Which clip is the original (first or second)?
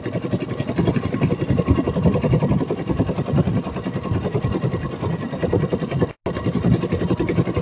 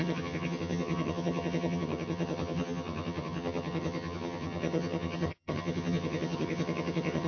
first